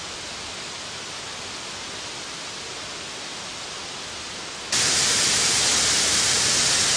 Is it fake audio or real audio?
real